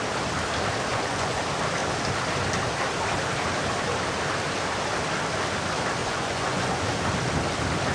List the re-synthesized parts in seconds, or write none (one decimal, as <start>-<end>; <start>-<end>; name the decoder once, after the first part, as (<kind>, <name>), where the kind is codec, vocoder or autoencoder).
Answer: 0.9-1.4 (vocoder, Vocos); 6.0-6.7